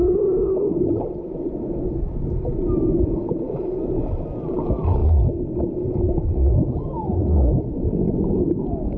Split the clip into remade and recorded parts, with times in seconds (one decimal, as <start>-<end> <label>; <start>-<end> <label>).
0.0-9.0 recorded